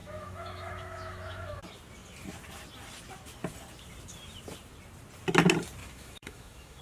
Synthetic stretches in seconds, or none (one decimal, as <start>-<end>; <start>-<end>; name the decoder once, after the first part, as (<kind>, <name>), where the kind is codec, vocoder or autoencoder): 0.0-1.6 (autoencoder, DAC-VAE); 5.8-6.8

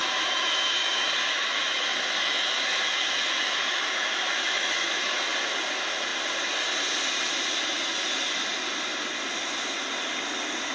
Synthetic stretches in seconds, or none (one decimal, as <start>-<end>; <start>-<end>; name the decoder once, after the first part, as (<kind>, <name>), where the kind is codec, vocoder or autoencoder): 0.0-5.2 (autoencoder, DAC-VAE)

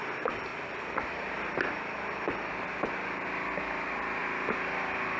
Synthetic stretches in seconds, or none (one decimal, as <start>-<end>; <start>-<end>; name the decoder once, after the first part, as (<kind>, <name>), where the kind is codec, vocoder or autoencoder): none

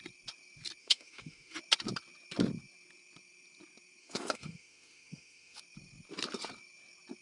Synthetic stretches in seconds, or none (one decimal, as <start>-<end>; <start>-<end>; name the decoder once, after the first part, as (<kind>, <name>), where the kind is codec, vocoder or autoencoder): 0.8-1.6 (autoencoder, DAC-VAE); 4.0-5.6

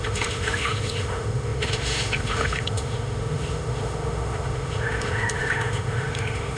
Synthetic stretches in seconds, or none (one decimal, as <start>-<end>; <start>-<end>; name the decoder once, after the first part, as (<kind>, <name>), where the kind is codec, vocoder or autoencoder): 0.0-6.6 (autoencoder, DAC-VAE)